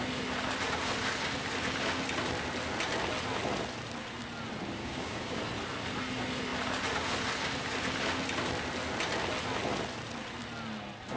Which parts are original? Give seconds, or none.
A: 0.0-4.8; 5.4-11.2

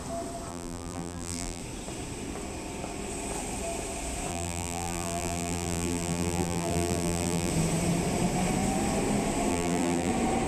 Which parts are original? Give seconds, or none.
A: 0.0-0.5; 1.6-4.3; 7.5-9.5; 10.1-10.5

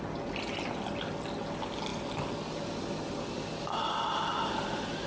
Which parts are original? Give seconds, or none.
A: 0.0-5.1

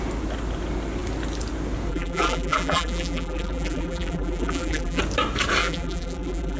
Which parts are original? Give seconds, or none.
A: 0.0-1.9; 5.0-5.6

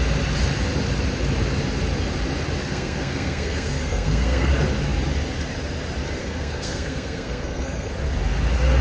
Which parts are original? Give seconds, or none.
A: 0.0-2.6; 4.5-6.2; 7.9-8.8

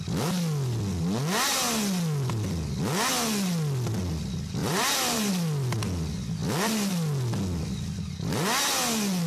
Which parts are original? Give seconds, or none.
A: 0.0-4.6; 5.3-9.3